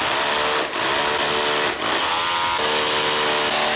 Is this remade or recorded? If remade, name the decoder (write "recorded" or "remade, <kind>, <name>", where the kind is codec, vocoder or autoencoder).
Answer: recorded